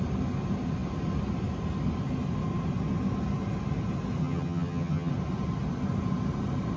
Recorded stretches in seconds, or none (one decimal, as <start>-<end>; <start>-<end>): 0.0-4.2; 5.1-6.8